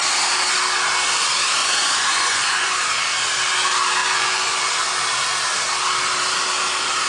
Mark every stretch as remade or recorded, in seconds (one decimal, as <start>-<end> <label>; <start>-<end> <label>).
0.0-1.6 recorded; 1.6-2.8 remade; 2.8-4.0 recorded; 4.0-4.7 remade; 4.7-7.1 recorded